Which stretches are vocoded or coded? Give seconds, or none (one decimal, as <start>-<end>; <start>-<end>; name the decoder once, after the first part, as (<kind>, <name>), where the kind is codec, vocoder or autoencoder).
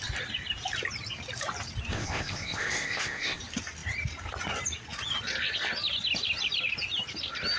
1.9-3.4 (codec, ZipCodec)